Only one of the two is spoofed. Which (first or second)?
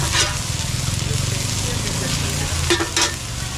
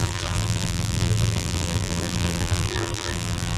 second